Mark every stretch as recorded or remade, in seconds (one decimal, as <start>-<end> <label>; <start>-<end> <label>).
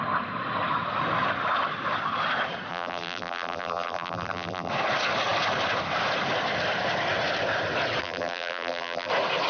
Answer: 0.0-2.7 recorded; 2.7-4.7 remade; 4.7-8.0 recorded; 8.0-9.1 remade; 9.1-9.5 recorded